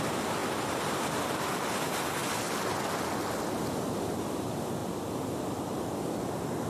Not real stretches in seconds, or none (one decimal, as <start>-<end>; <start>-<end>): 4.8-5.9